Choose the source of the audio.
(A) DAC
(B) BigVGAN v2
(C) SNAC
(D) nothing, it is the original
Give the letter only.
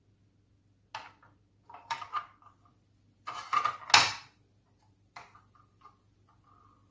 D